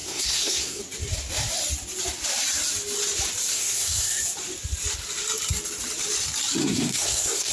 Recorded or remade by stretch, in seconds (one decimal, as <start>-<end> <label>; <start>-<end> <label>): 0.0-0.8 remade; 0.8-3.5 recorded; 3.5-4.2 remade; 4.2-6.6 recorded; 6.6-7.5 remade